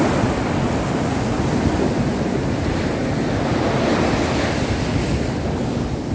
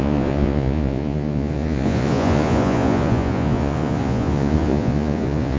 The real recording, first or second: first